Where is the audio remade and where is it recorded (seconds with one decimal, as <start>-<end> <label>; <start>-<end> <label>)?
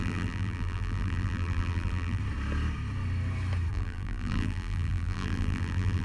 0.0-2.2 remade; 2.2-3.7 recorded; 3.7-6.0 remade